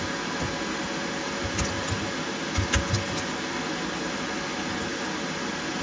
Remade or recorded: recorded